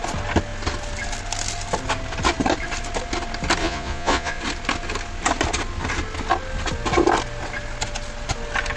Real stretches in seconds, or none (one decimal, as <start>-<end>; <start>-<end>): 0.0-3.6; 4.4-8.8